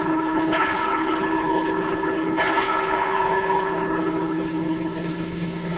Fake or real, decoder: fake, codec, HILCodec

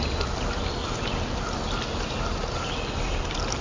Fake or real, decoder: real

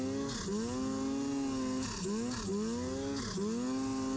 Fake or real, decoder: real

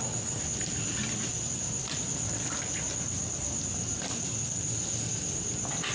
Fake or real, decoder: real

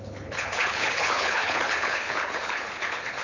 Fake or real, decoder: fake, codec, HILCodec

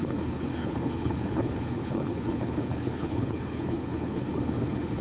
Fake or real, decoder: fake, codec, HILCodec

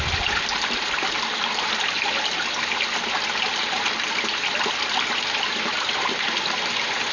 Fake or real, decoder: real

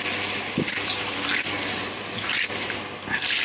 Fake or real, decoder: real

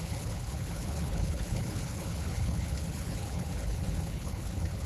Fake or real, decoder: fake, codec, HILCodec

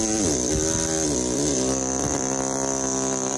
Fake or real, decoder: real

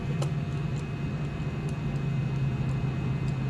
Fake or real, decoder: real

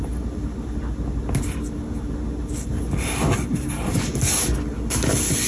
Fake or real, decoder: real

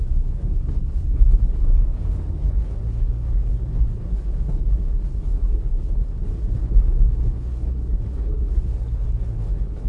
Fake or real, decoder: fake, codec, HILCodec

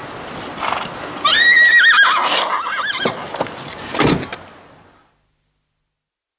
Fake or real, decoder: real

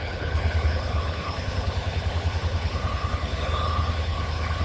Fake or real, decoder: fake, codec, HILCodec